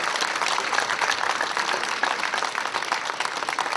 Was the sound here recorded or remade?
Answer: recorded